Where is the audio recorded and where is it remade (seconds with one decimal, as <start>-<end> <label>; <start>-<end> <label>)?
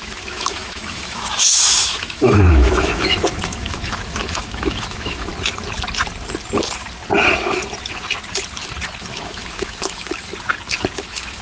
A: 0.0-5.3 remade; 5.3-9.0 recorded; 9.0-10.3 remade; 10.3-11.0 recorded; 11.0-11.4 remade